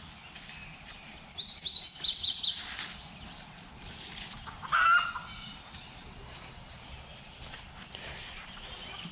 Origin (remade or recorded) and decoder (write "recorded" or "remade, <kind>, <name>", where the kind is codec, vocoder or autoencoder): recorded